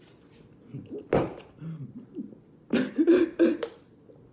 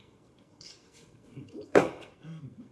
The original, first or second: first